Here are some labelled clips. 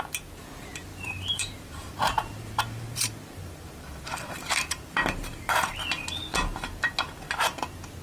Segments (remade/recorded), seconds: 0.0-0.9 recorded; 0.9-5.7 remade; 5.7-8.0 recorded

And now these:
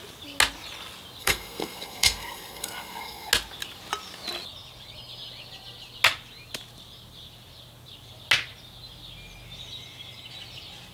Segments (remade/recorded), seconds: 0.0-1.2 recorded; 1.2-3.3 remade; 3.3-10.9 recorded

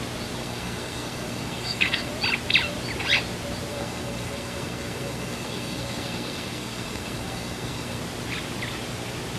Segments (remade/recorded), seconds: 0.0-0.4 recorded; 0.4-2.1 remade; 2.1-3.7 recorded; 3.7-8.0 remade; 8.0-9.4 recorded

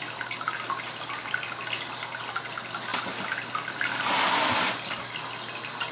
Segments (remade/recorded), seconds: 0.0-5.9 recorded

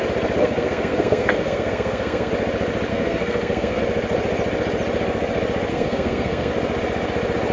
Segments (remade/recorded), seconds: 0.0-0.4 recorded; 0.4-2.3 remade; 2.3-2.9 recorded; 2.9-3.8 remade; 3.8-5.7 recorded; 5.7-6.5 remade; 6.5-7.5 recorded

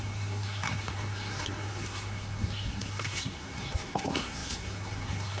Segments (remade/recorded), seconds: 0.0-5.4 remade

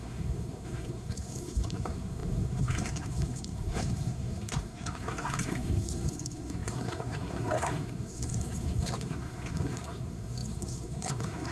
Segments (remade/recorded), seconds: 0.0-11.5 remade